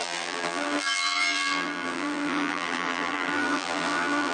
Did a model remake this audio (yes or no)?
yes